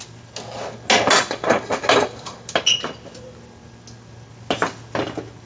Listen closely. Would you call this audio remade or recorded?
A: recorded